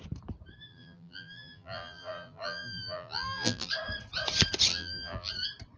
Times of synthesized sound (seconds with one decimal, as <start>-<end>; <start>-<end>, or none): 0.7-3.7; 4.7-5.3